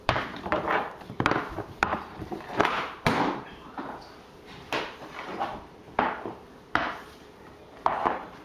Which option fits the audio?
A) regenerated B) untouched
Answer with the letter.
A